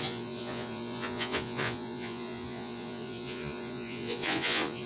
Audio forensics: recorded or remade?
remade